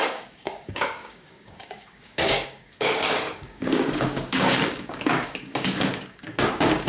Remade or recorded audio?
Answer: remade